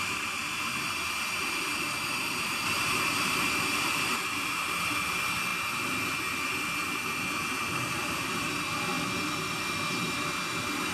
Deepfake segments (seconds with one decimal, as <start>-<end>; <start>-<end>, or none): none